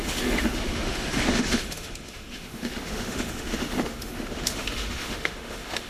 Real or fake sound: fake